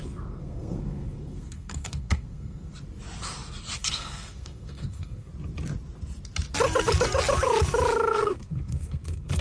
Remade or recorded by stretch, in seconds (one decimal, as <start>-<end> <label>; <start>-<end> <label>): 0.0-2.7 remade; 2.7-3.8 recorded; 3.8-5.3 remade; 5.3-8.1 recorded; 8.1-9.4 remade